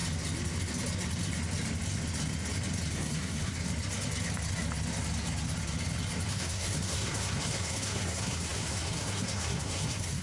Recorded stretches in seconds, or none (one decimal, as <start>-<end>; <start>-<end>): 0.0-2.9; 3.6-6.3